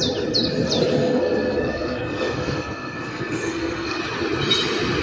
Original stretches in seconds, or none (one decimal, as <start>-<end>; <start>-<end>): 0.0-1.0; 4.0-5.0